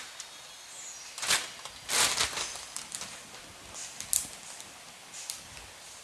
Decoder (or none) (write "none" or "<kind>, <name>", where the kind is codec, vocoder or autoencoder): none